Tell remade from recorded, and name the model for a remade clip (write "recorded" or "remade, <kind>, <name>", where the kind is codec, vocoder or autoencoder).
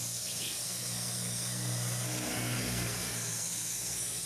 remade, codec, SNAC